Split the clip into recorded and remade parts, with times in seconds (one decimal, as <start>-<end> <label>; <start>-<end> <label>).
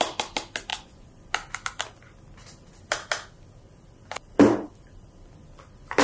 0.0-0.7 recorded; 0.7-1.3 remade; 1.3-6.0 recorded